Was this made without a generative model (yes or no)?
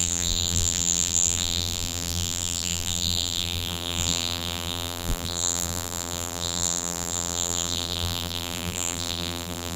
no